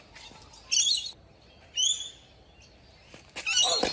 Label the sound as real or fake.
real